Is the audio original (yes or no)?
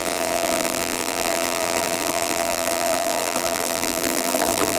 no